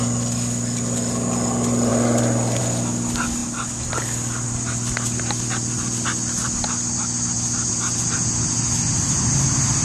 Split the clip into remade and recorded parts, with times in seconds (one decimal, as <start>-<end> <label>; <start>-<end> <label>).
0.0-9.8 recorded